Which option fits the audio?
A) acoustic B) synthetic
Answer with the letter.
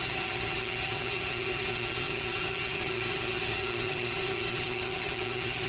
B